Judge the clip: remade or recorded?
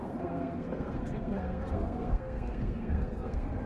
remade